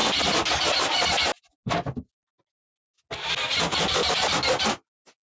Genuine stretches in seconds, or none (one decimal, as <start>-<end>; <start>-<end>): 0.0-5.3